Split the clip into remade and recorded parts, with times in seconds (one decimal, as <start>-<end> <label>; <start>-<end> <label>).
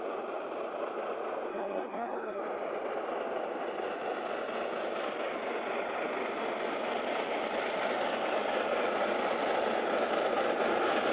0.0-1.5 recorded; 1.5-2.4 remade; 2.4-11.1 recorded